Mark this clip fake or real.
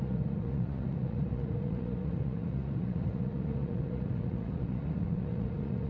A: fake